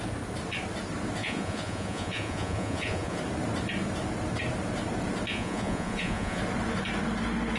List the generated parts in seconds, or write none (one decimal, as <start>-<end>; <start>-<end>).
1.2-3.2; 5.3-6.4